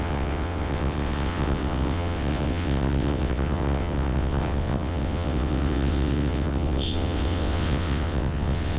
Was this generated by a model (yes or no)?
yes